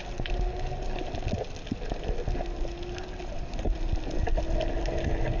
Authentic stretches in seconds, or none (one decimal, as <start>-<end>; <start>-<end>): 0.0-5.4

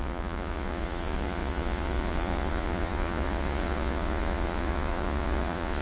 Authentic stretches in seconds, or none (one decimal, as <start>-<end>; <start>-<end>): none

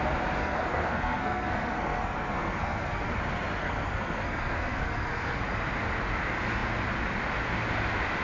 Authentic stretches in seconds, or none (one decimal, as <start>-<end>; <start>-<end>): 0.0-0.4; 3.1-3.6; 5.4-8.2

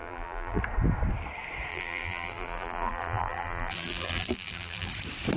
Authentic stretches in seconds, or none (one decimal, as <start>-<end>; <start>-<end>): 0.6-1.7; 4.9-5.4

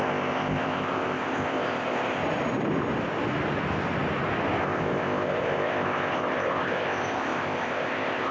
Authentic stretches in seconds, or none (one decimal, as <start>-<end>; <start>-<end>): 2.2-4.6

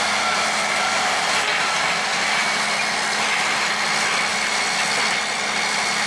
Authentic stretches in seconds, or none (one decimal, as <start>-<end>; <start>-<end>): 0.0-6.1

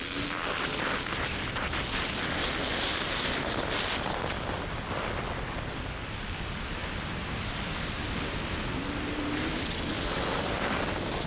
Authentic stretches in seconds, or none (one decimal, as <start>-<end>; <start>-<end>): 0.0-11.3